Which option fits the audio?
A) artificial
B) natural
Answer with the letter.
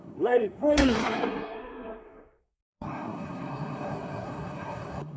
A